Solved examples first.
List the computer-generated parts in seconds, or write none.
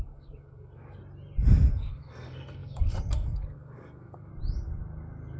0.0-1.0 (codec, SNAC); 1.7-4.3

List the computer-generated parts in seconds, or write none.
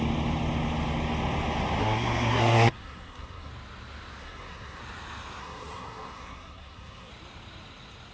1.8-3.5 (codec, SNAC); 4.2-4.8; 5.4-7.1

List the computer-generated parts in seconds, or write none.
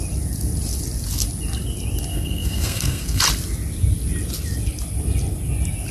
2.1-3.2 (codec, SNAC)